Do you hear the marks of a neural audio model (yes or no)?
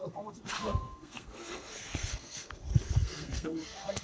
yes